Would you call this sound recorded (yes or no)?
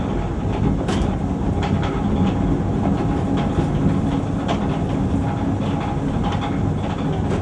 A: yes